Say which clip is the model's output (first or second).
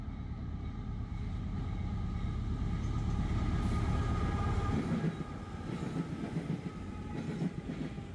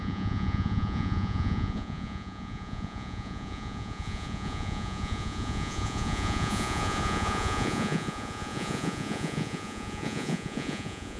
second